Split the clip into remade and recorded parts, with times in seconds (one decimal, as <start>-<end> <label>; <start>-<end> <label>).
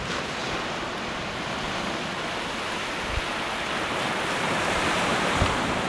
0.0-0.4 remade; 0.4-3.9 recorded; 3.9-5.9 remade